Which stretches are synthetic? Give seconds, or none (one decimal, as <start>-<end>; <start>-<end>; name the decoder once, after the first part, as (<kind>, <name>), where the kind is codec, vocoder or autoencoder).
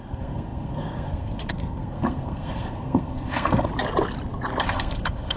0.0-3.7 (codec, SNAC); 4.6-5.4